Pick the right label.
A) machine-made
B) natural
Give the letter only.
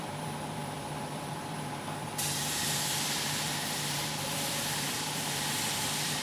A